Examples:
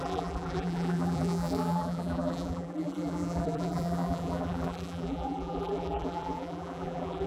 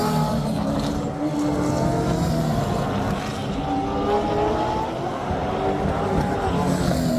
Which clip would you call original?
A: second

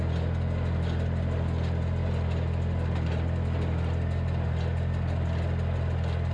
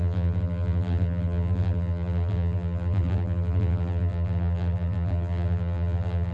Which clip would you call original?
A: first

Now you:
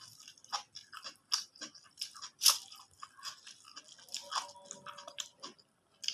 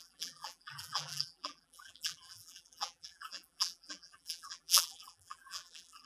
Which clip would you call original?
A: first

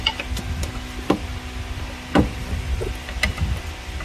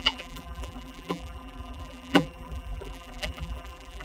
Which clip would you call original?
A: first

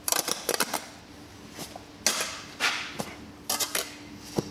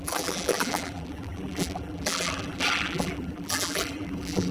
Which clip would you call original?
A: first